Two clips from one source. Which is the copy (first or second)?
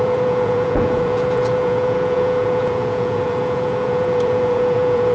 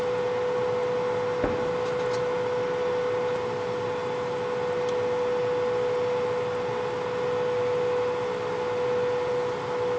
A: first